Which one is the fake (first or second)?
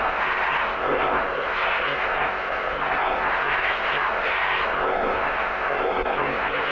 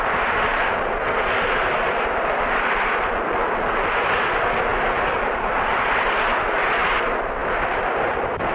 first